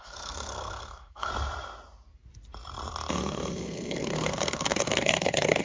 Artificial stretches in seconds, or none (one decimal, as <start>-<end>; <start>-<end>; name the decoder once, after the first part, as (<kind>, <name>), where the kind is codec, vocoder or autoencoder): 0.0-1.3 (codec, SNAC); 3.1-5.6